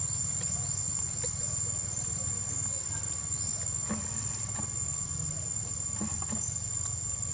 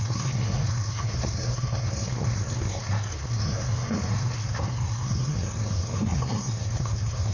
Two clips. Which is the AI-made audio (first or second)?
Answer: second